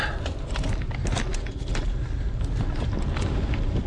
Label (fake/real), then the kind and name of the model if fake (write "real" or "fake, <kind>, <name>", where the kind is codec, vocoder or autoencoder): real